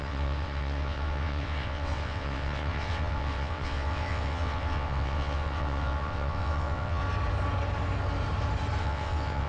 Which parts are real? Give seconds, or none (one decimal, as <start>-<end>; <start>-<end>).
7.0-8.8